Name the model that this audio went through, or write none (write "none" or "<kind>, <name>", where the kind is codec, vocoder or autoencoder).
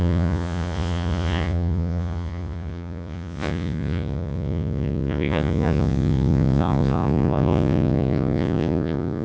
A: vocoder, Vocos